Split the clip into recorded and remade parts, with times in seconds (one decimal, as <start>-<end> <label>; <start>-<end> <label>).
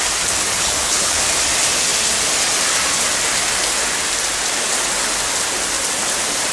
0.0-0.5 recorded; 0.5-1.2 remade; 1.2-6.5 recorded